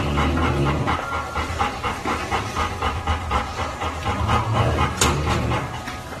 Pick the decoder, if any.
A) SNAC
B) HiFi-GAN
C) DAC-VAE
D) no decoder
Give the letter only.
D